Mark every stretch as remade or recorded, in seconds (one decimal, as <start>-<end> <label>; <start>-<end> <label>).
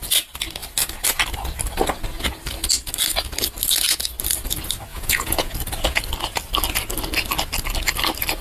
0.0-4.9 recorded; 4.9-5.5 remade; 5.5-8.4 recorded